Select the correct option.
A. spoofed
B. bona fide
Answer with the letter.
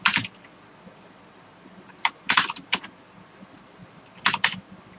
B